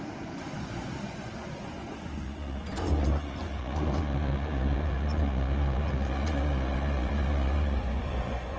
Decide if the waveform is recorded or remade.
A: remade